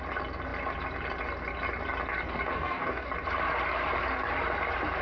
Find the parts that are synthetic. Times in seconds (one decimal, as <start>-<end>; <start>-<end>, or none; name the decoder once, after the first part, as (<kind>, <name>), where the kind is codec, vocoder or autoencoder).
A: 2.5-3.1 (codec, DAC)